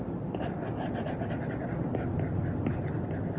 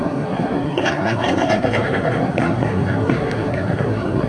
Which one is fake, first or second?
second